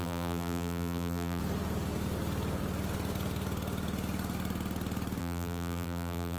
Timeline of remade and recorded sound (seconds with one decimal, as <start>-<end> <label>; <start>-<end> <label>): 0.0-1.4 remade; 1.4-5.2 recorded; 5.2-6.4 remade